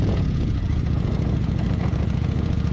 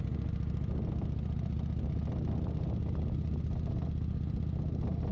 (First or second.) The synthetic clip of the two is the first